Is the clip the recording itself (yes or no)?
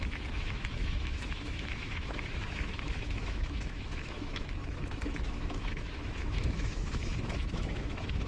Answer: no